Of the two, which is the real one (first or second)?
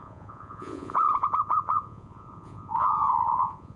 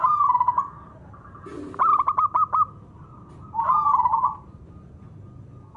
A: second